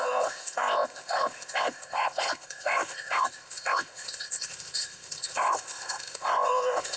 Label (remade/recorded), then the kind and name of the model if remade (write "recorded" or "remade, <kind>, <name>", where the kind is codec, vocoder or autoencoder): remade, codec, ZipCodec